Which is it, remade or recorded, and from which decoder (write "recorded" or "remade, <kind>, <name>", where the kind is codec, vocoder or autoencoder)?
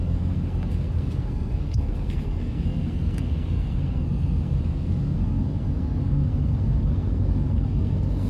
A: remade, codec, SNAC